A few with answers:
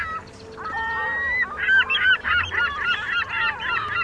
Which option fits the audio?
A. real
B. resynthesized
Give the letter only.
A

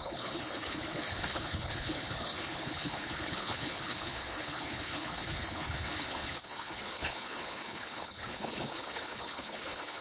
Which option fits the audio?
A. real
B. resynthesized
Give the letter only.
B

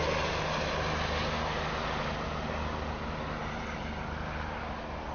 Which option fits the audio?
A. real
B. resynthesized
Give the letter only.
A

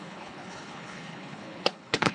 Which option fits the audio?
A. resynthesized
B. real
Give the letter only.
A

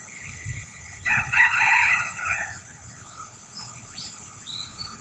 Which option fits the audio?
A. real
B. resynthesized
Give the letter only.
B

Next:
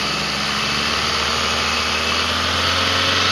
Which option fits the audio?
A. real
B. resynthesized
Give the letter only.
A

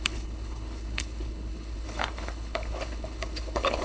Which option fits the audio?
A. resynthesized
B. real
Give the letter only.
A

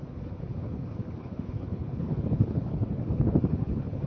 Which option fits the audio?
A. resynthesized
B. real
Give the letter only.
A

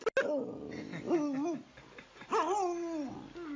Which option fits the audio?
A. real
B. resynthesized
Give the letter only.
A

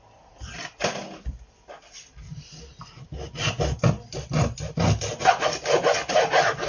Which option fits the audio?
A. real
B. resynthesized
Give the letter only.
A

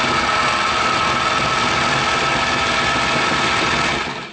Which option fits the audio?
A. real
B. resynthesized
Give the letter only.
A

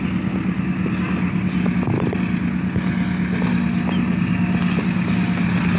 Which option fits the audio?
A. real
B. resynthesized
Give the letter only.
A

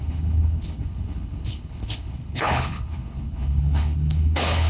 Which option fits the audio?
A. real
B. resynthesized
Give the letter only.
B